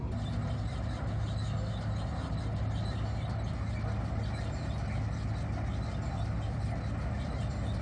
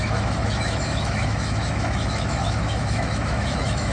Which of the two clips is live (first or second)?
first